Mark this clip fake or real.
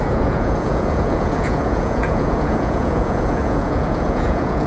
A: fake